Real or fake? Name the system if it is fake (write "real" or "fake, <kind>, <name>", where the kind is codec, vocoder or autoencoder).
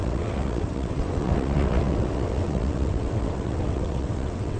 fake, vocoder, WaveNeXt